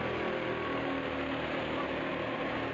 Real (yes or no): yes